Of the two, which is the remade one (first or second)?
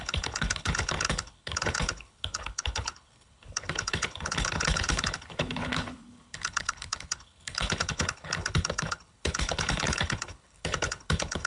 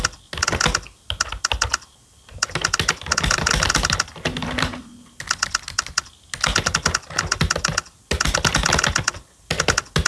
first